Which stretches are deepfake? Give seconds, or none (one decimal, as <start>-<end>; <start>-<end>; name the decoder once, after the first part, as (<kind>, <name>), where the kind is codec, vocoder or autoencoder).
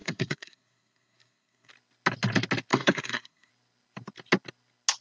0.0-1.7 (codec, SNAC); 2.7-3.5